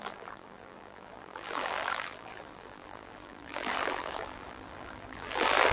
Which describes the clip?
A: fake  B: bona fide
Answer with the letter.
A